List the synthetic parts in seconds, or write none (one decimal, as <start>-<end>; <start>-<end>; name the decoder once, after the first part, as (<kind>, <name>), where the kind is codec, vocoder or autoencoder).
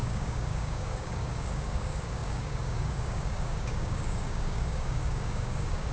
0.0-5.9 (codec, DAC)